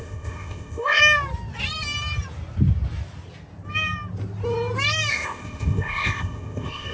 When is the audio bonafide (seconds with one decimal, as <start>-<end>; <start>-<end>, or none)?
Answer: 1.0-5.1